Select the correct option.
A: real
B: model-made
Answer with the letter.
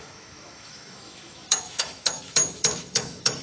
B